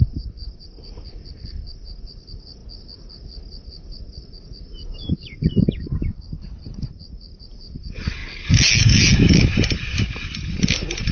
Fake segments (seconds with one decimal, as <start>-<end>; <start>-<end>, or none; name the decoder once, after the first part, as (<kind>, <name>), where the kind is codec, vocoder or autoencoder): 6.4-6.9 (codec, HILCodec)